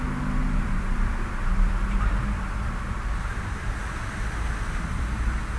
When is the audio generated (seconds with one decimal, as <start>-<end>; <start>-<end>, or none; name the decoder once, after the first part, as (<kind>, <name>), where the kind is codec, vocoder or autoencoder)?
0.6-4.0 (vocoder, BigVGAN v2)